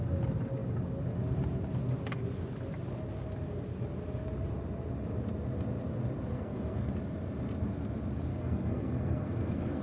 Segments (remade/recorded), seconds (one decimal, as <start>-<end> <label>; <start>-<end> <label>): 0.0-6.3 recorded; 6.3-6.9 remade; 6.9-8.3 recorded; 8.3-9.8 remade